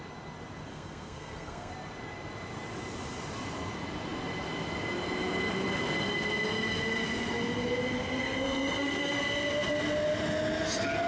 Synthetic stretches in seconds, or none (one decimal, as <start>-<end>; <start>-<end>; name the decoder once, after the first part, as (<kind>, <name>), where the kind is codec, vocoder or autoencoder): 0.7-1.7 (codec, SNAC); 8.2-9.2